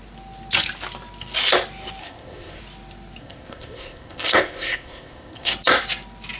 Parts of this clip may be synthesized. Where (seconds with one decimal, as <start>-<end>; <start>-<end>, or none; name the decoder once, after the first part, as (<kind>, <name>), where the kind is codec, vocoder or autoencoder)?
2.0-2.6 (codec, ZipCodec); 3.2-5.5